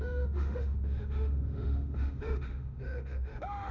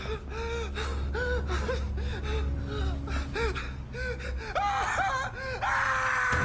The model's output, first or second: first